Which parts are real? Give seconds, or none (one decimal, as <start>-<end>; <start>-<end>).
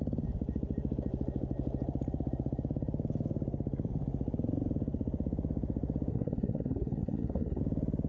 0.0-6.1; 7.6-8.1